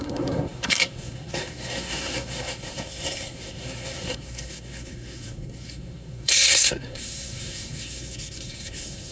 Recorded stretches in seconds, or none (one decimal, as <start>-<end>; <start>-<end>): none